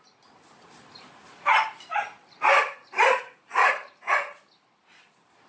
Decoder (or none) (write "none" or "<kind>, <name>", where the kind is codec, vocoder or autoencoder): none